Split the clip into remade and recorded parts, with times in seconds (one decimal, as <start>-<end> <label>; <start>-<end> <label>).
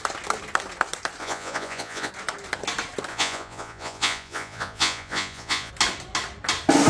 0.0-1.2 recorded; 1.2-2.1 remade; 2.1-3.1 recorded; 3.1-5.7 remade; 5.7-6.9 recorded